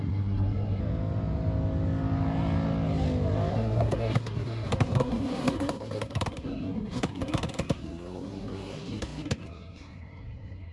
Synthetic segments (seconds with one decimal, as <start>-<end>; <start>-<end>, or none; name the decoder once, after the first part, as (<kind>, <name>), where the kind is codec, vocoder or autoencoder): 0.0-0.8 (codec, SNAC); 3.5-10.7

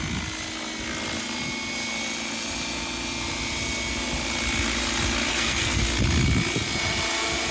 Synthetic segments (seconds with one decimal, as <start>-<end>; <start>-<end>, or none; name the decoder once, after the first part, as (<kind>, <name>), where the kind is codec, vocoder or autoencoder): 5.3-5.8 (codec, SNAC)

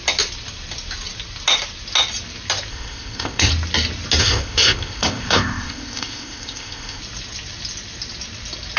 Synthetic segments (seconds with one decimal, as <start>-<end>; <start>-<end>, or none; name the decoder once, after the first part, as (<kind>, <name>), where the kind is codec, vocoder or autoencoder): 2.7-3.5 (codec, ZipCodec); 4.2-7.0

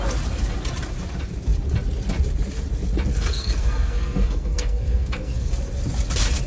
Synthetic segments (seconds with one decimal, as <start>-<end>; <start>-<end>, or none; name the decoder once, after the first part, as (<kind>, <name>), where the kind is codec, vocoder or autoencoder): 3.1-5.5 (codec, SNAC)